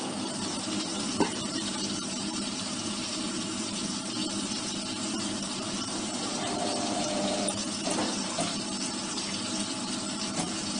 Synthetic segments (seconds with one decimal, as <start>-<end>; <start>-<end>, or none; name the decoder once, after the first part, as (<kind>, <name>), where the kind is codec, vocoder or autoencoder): 0.0-7.6 (vocoder, BigVGAN v2); 8.1-10.8